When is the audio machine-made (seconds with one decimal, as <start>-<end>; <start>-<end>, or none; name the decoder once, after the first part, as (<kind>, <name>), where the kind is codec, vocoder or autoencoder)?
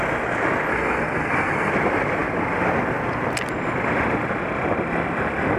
0.7-1.7 (codec, SNAC)